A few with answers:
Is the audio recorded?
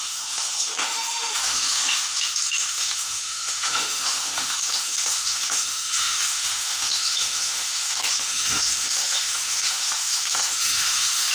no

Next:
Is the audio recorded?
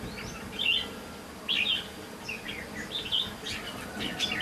yes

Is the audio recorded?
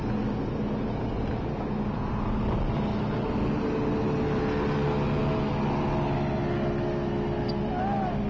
yes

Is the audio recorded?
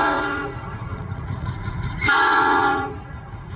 no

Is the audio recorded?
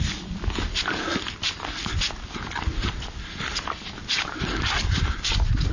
yes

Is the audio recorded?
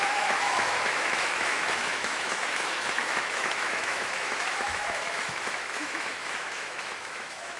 no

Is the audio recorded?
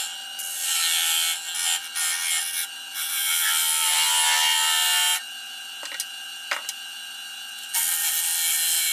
yes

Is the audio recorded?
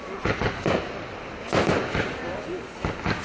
yes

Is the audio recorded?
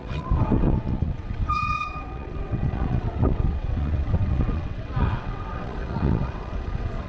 no